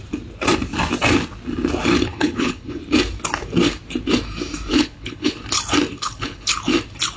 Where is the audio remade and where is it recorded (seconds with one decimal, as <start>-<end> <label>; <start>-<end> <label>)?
0.0-2.1 recorded; 2.1-2.8 remade; 2.8-4.7 recorded; 4.7-5.4 remade; 5.4-5.9 recorded; 5.9-6.5 remade; 6.5-7.2 recorded